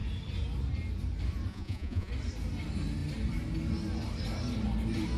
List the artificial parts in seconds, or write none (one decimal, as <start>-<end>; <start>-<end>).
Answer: 1.5-2.1